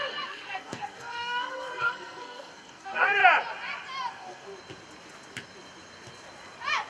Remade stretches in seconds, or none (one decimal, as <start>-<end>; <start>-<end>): 0.0-3.2; 4.1-4.5

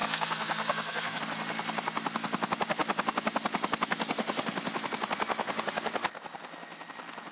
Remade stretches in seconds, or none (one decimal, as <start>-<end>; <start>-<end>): 0.0-1.2

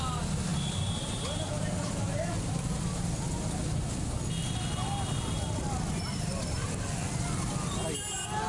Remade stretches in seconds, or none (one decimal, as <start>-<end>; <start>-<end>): none

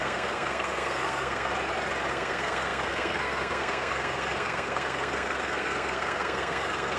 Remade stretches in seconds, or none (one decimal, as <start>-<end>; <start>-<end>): 0.0-1.5; 2.1-7.0

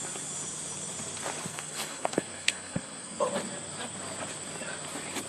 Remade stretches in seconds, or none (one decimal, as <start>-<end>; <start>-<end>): 1.5-3.2

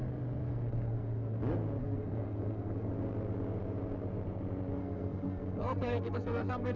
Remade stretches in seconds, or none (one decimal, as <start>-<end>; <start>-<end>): 0.4-1.4; 1.8-2.9; 4.8-6.8